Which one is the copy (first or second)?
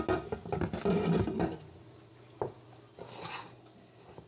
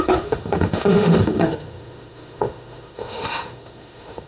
second